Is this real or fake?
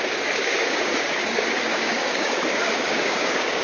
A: fake